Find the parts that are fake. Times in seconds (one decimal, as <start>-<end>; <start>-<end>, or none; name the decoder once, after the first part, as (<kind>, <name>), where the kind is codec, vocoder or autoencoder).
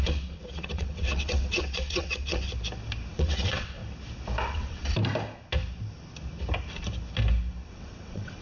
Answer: 0.0-2.5 (vocoder, WaveNeXt); 3.1-3.8; 4.4-5.0; 7.7-8.4